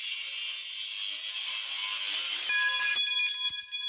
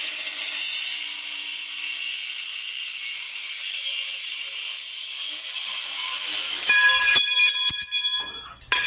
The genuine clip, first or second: first